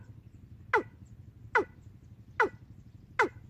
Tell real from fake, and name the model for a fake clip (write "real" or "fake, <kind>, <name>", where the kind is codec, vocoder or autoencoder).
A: real